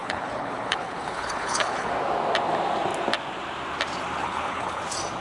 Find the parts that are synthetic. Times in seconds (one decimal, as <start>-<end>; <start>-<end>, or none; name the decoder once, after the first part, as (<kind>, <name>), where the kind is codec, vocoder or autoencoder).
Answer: 0.0-1.9 (codec, HILCodec); 4.2-4.8